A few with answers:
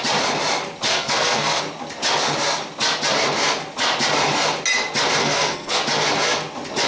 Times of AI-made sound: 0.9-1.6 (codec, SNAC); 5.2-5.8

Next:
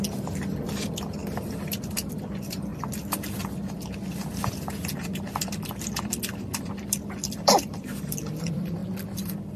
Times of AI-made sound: 0.0-2.7 (vocoder, BigVGAN v2); 7.3-8.8